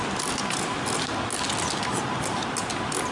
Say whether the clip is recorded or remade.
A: recorded